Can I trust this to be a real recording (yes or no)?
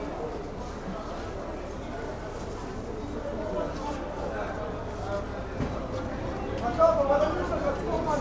yes